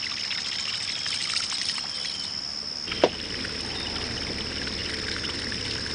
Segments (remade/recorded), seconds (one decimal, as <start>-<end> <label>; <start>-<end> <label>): 0.0-5.9 recorded